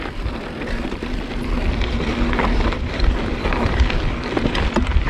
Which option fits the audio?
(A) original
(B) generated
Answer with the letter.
B